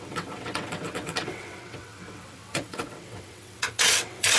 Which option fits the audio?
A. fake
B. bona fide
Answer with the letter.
A